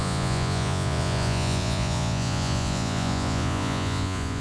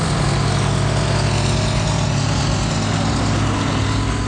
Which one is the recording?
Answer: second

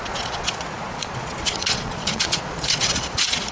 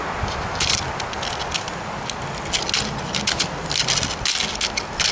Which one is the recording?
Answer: second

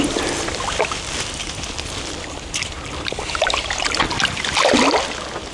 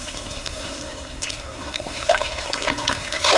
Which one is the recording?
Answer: first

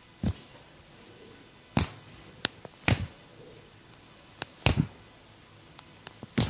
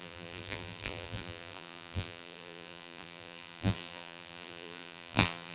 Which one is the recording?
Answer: first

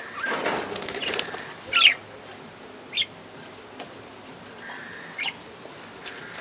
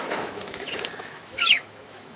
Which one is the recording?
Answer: first